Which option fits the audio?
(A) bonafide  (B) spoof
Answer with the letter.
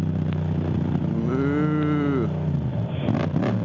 A